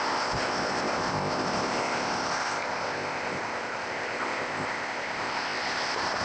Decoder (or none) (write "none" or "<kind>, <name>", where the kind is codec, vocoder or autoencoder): codec, ZipCodec